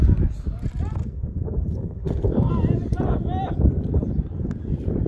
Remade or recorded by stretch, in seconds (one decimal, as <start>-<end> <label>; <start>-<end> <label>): 0.0-1.0 recorded; 1.0-2.5 remade; 2.5-5.1 recorded